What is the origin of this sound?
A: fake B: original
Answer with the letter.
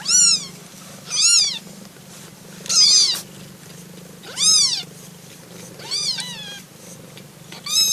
B